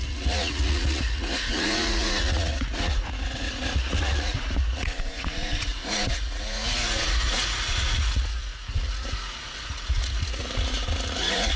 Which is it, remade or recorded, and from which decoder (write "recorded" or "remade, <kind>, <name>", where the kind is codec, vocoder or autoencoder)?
remade, vocoder, Vocos